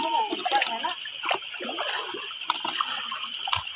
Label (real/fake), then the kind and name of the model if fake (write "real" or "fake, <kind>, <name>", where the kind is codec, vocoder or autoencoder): real